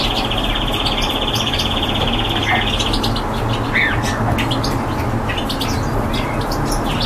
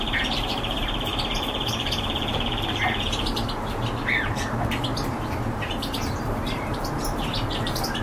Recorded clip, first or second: first